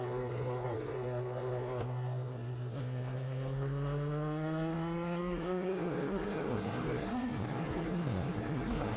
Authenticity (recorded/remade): remade